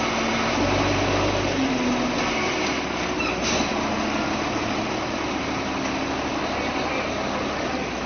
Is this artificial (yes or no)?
no